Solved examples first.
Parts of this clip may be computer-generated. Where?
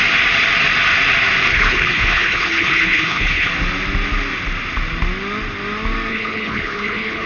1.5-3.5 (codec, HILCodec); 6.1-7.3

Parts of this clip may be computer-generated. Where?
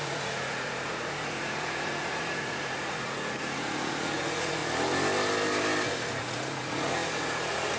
0.0-4.6 (vocoder, Vocos); 6.2-7.8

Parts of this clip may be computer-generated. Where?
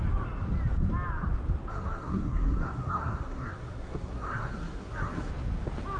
1.7-5.3 (codec, SNAC)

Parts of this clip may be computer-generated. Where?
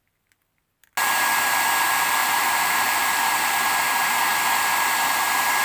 2.2-3.0 (vocoder, BigVGAN v2)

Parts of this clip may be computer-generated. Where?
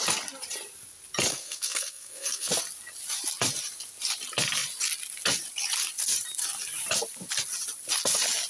1.3-2.5 (codec, SNAC)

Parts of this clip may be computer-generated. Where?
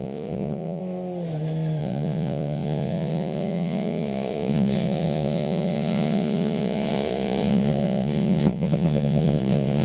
0.0-0.8 (vocoder, Vocos); 1.8-9.8